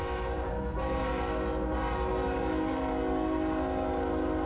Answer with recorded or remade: recorded